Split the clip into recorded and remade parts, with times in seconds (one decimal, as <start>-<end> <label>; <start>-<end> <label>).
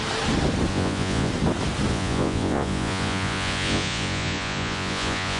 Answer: 0.0-0.7 recorded; 0.7-1.3 remade; 1.3-1.9 recorded; 1.9-5.4 remade